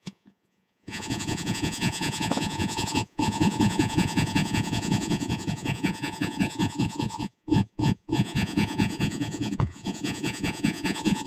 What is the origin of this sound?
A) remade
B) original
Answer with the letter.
A